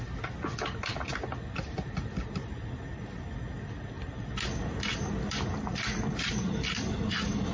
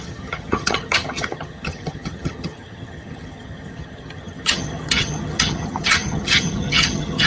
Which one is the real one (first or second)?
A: first